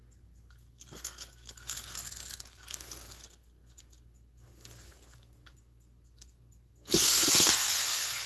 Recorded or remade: remade